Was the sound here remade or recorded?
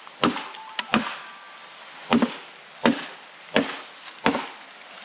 recorded